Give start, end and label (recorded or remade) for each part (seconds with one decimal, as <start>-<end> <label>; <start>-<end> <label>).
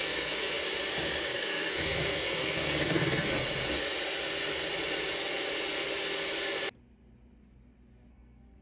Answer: 0.0-0.6 remade; 0.6-1.2 recorded; 1.2-3.3 remade; 3.3-8.1 recorded; 8.1-8.6 remade